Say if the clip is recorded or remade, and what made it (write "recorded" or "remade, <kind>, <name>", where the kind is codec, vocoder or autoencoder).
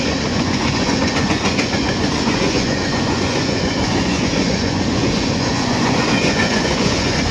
remade, vocoder, Vocos